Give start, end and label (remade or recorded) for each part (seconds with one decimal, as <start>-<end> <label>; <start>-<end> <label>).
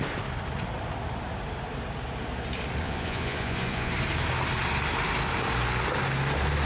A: 0.0-2.8 recorded; 2.8-3.9 remade; 3.9-6.6 recorded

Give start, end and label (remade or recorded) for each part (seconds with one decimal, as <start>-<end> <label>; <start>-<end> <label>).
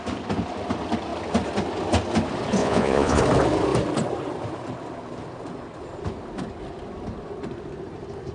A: 0.0-2.6 recorded; 2.6-3.2 remade; 3.2-8.3 recorded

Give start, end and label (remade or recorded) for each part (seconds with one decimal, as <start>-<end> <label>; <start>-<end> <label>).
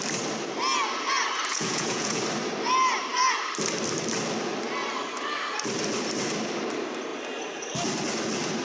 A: 0.0-1.5 recorded; 1.5-2.2 remade; 2.2-8.6 recorded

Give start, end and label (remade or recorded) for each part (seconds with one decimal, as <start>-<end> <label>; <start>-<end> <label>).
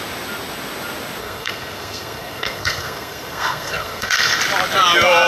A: 0.0-1.2 recorded; 1.2-4.4 remade; 4.4-5.3 recorded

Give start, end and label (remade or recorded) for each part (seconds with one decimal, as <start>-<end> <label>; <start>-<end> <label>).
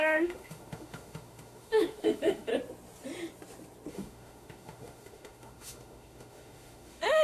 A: 0.0-2.5 remade; 2.5-3.9 recorded; 3.9-7.2 remade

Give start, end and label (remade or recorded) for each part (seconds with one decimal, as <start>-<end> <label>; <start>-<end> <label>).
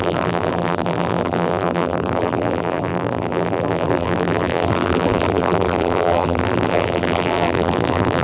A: 0.0-8.2 remade